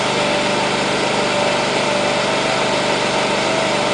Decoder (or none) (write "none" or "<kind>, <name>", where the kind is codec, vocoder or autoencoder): none